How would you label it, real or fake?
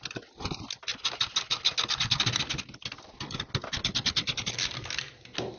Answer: real